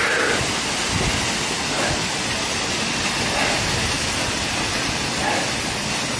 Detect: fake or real real